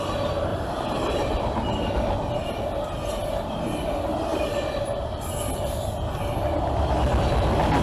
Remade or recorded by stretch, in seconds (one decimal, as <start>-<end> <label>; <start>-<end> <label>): 0.0-0.5 recorded; 0.5-1.4 remade; 1.4-7.8 recorded